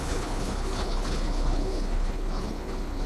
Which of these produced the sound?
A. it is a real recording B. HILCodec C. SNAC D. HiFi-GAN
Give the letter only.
B